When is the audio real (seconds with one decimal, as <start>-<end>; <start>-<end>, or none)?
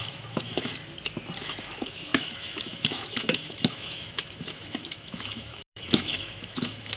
0.7-1.4